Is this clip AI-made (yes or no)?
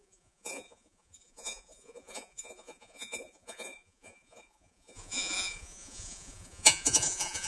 yes